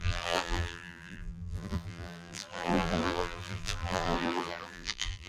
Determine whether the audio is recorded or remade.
remade